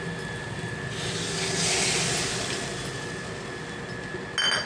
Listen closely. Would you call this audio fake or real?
real